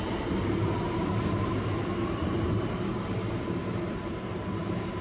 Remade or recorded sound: remade